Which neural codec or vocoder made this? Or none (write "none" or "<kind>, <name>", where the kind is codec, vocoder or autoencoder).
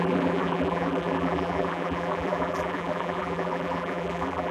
vocoder, BigVGAN v2